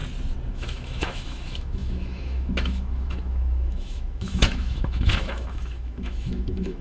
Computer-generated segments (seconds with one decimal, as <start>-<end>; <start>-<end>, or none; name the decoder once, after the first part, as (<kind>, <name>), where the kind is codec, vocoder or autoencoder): 0.5-6.8 (autoencoder, DAC-VAE)